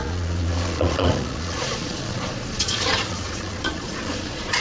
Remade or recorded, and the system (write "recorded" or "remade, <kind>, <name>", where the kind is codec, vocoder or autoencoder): remade, vocoder, Vocos